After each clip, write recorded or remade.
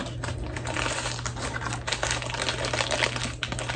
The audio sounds recorded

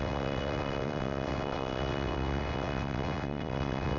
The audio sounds remade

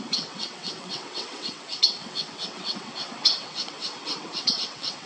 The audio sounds remade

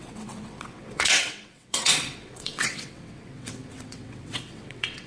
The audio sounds remade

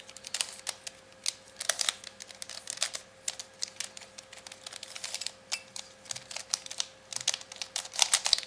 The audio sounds recorded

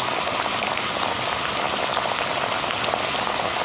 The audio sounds recorded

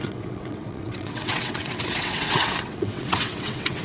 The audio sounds remade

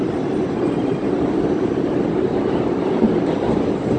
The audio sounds recorded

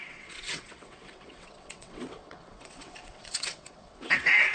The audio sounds remade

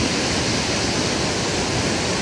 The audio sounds recorded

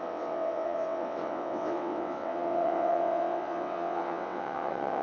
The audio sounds remade